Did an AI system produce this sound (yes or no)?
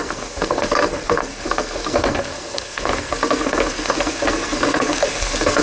yes